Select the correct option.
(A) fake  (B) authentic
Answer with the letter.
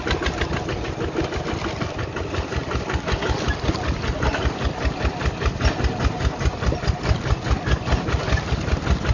B